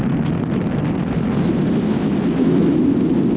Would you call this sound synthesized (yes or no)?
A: no